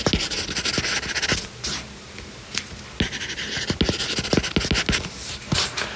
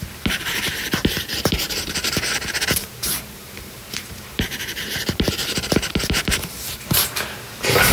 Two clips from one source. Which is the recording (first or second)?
first